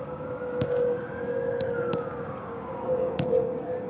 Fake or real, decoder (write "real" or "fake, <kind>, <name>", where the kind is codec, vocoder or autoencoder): fake, codec, DAC